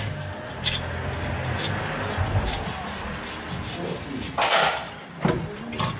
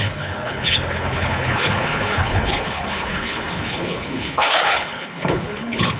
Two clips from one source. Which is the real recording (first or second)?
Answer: first